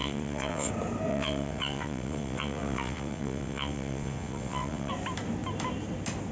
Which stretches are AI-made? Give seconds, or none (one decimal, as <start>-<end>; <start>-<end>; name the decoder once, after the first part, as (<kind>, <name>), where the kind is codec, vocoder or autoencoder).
0.0-0.7 (vocoder, WaveNeXt); 1.1-4.9